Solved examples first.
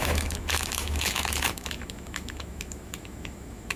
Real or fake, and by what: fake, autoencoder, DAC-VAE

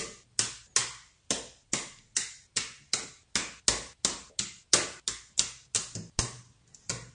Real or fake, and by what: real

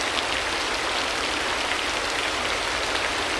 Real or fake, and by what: real